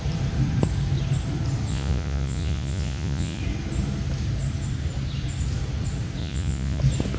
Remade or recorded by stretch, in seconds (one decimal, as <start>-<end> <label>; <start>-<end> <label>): 0.0-1.7 recorded; 1.7-3.4 remade; 3.4-6.2 recorded; 6.2-6.8 remade; 6.8-7.2 recorded